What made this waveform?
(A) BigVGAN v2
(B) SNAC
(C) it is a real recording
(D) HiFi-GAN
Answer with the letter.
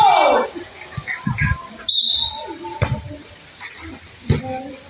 C